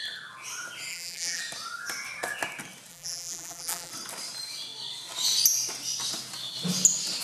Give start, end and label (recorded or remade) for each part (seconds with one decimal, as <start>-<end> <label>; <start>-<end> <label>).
0.0-0.9 recorded; 0.9-1.4 remade; 1.4-2.9 recorded; 2.9-3.9 remade; 3.9-7.2 recorded